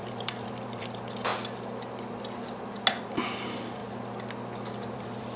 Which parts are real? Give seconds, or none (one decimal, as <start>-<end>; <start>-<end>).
1.3-3.0; 3.8-4.9